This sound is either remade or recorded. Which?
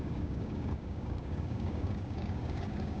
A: remade